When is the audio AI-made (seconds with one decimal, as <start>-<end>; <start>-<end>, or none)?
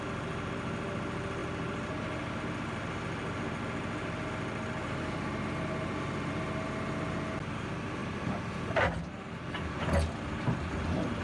8.0-8.5